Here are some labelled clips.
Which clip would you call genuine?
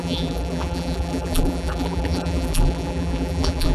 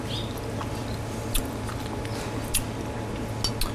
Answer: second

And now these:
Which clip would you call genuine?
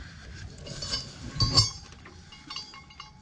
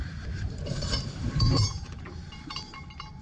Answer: first